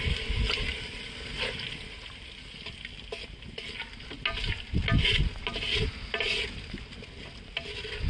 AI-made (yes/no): no